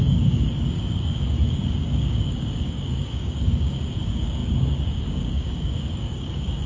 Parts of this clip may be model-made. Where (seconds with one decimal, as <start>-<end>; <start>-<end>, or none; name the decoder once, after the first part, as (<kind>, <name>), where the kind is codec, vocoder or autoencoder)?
0.0-6.7 (codec, DAC)